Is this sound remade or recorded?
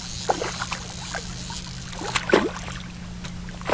recorded